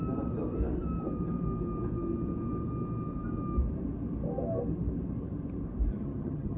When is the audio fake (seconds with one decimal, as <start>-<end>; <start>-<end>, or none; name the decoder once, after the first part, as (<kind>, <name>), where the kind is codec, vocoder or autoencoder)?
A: 5.9-6.6 (vocoder, HiFi-GAN)